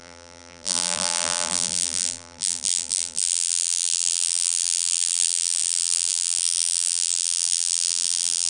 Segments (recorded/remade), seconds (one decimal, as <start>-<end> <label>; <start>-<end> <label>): 0.0-8.5 remade

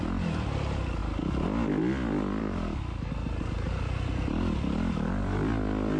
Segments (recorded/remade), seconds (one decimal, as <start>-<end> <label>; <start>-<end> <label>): 0.0-2.4 recorded; 2.4-3.1 remade; 3.1-6.0 recorded

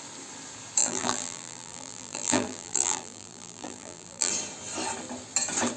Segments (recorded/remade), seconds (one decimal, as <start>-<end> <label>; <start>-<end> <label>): 0.0-0.8 recorded; 0.8-4.3 remade; 4.3-5.8 recorded

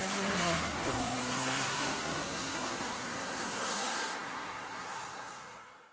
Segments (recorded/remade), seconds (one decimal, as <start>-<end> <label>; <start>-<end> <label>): 0.0-5.9 remade